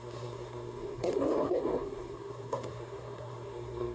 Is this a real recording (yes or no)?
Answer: no